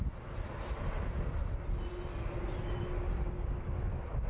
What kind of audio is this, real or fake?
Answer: real